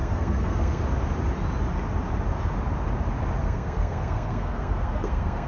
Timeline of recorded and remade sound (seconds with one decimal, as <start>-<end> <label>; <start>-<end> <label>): 0.0-0.8 remade; 0.8-3.4 recorded; 3.4-5.5 remade

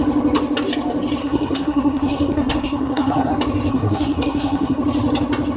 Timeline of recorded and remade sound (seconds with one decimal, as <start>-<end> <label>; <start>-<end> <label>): 0.0-1.2 recorded; 1.2-3.3 remade; 3.3-3.7 recorded; 3.7-4.8 remade; 4.8-5.6 recorded

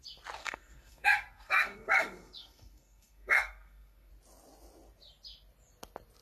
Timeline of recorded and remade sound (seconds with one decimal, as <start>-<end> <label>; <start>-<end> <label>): 0.0-0.4 recorded; 0.4-4.1 remade; 4.1-6.2 recorded

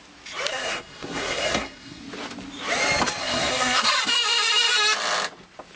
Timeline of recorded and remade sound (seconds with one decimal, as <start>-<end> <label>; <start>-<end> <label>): 0.0-0.5 recorded; 0.5-2.0 remade; 2.0-3.2 recorded; 3.2-3.9 remade; 3.9-5.8 recorded